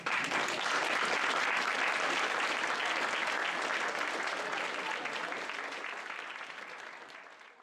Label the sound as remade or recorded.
recorded